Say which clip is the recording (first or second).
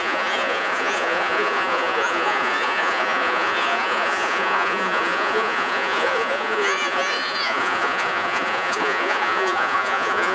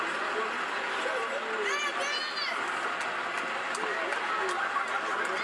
second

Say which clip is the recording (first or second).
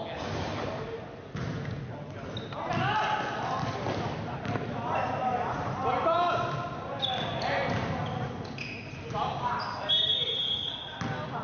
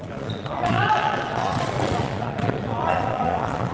first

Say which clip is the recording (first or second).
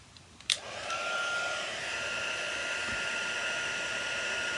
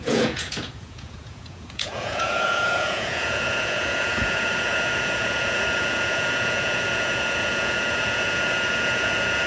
first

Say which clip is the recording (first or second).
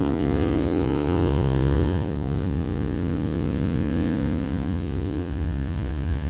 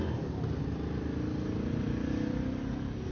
second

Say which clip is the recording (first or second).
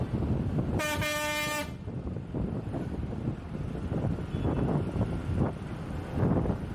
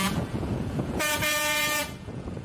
first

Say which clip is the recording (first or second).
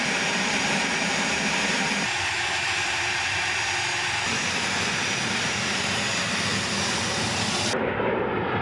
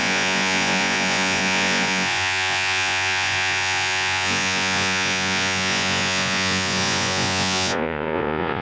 first